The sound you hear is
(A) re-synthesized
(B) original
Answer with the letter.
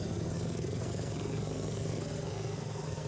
A